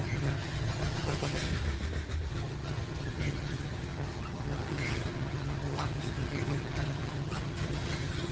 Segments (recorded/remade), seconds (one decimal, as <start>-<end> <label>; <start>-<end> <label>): 0.0-1.5 remade; 1.5-2.3 recorded; 2.3-8.3 remade